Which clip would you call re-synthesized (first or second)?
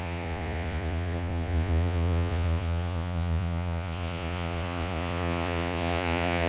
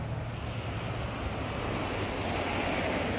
first